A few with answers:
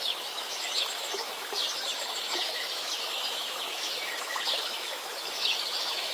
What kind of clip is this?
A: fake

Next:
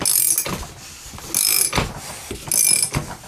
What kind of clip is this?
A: real